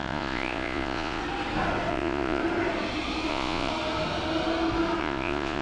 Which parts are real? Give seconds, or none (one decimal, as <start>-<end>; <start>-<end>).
1.2-1.9; 2.4-3.3; 3.7-5.0